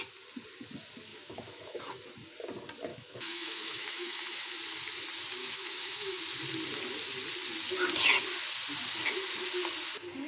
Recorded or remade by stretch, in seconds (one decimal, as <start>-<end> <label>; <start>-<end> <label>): 0.0-1.1 recorded; 1.1-1.8 remade; 1.8-2.9 recorded; 2.9-4.5 remade; 4.5-5.4 recorded; 5.4-6.2 remade; 6.2-10.3 recorded